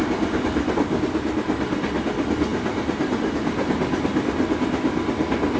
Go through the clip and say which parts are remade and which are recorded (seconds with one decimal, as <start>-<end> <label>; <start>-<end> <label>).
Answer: 0.0-5.6 recorded